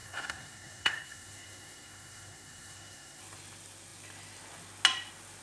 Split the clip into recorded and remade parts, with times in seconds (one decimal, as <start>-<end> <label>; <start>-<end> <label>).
0.0-3.2 remade; 3.2-5.4 recorded